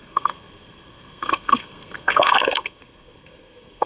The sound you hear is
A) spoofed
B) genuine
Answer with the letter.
A